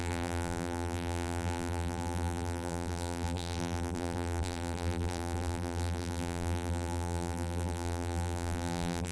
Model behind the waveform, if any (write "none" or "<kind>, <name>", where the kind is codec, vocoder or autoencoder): vocoder, BigVGAN v2